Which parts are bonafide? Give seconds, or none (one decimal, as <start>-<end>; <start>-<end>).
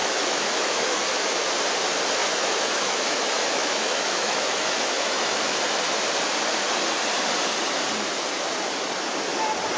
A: 1.5-2.2; 5.6-9.8